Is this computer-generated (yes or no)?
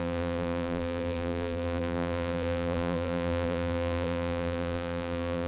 yes